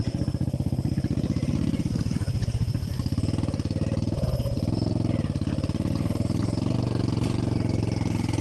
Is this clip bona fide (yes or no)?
yes